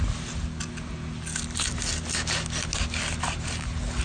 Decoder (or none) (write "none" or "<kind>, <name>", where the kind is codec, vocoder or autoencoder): none